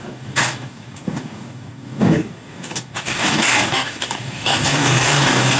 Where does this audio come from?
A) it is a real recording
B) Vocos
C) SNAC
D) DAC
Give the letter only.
D